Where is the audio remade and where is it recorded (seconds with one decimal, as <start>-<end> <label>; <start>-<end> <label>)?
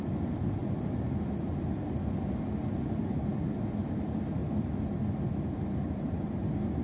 0.0-4.4 remade; 4.4-6.0 recorded; 6.0-6.8 remade